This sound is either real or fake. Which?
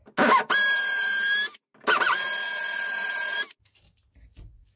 real